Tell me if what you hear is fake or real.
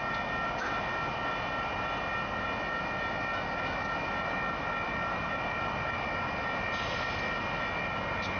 real